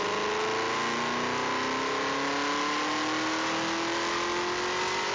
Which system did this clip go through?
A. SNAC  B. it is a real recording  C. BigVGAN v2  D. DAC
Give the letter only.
B